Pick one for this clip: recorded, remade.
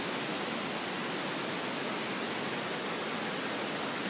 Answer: recorded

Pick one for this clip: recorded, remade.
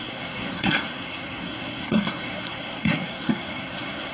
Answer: remade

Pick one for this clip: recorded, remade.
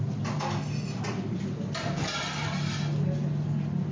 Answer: recorded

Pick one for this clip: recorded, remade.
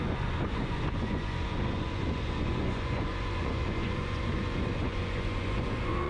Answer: remade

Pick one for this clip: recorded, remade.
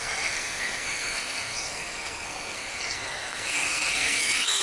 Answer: remade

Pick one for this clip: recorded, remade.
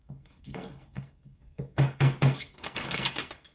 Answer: remade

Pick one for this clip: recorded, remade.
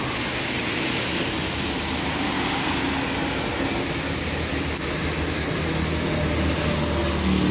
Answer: recorded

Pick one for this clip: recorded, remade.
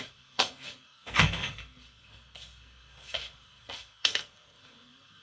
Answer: remade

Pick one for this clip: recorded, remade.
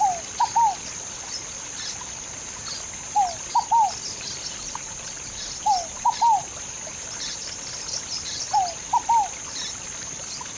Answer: recorded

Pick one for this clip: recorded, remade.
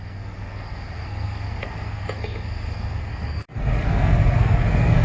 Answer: remade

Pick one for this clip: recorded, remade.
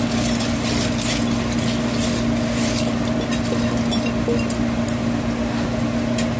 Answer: recorded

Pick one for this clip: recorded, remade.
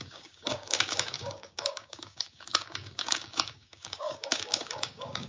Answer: remade